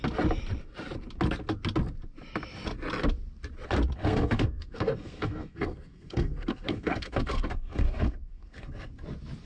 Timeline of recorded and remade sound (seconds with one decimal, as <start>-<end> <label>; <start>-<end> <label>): 0.0-4.0 recorded; 4.0-8.9 remade; 8.9-9.5 recorded